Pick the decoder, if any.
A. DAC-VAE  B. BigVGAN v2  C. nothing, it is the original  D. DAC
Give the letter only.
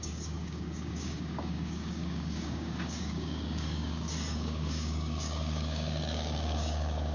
D